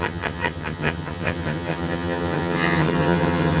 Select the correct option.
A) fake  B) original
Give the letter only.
A